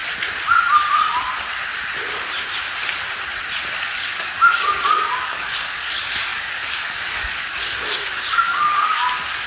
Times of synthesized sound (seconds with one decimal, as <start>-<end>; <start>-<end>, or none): 3.8-9.5